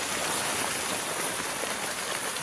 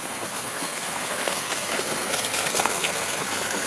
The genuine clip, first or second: first